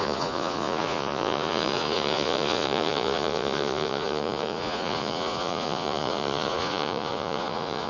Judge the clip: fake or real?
fake